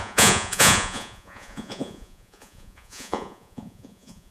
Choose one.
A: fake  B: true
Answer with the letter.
A